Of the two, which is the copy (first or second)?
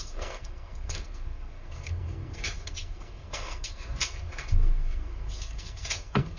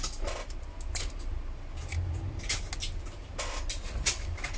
first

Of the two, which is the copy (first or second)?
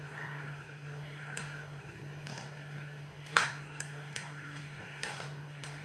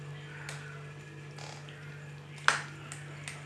first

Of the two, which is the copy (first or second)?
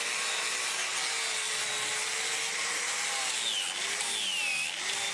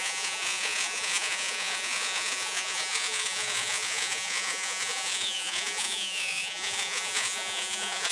second